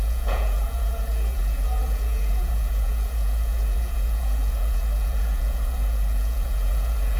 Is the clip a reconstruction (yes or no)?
yes